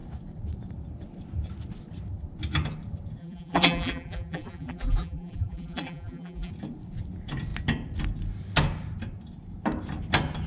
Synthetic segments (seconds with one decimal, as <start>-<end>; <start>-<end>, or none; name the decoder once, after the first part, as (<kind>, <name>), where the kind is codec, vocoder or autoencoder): 3.2-6.5 (vocoder, BigVGAN v2)